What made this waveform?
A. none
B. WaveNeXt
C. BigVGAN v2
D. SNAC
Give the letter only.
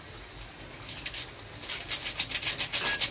A